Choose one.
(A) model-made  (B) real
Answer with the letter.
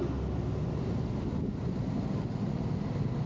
B